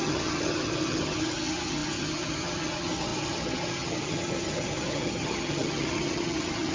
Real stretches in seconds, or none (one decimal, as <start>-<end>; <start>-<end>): none